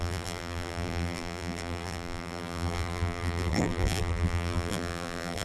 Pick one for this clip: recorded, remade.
remade